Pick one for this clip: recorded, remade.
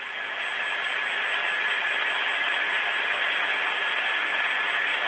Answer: recorded